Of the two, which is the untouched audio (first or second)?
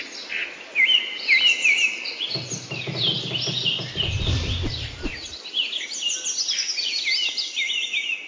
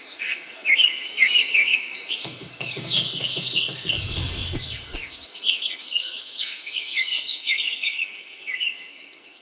first